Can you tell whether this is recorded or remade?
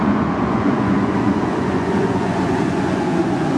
remade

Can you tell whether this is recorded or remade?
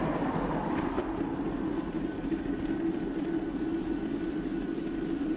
recorded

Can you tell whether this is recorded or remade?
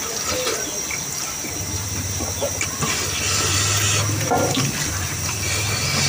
recorded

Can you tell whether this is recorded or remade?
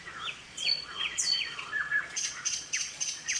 remade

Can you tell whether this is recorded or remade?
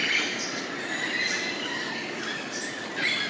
recorded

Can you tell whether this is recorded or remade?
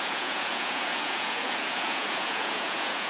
remade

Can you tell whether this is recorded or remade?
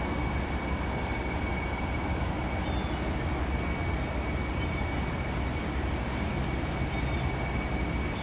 recorded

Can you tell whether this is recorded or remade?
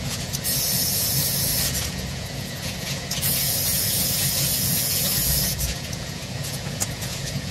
remade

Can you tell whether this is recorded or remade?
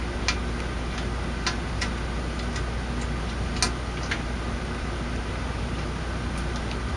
recorded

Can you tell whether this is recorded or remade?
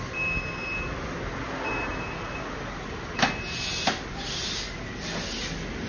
recorded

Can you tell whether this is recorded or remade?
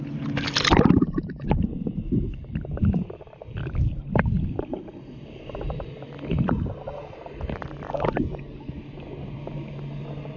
recorded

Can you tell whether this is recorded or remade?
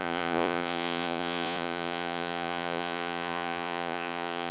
remade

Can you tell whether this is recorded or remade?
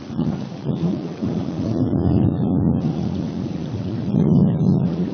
remade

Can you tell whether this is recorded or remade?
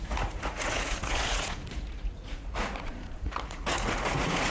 remade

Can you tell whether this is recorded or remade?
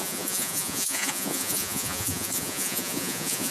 remade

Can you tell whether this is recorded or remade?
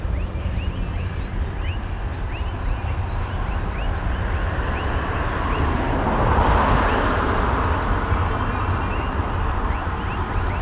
recorded